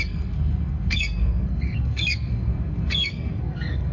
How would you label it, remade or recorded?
remade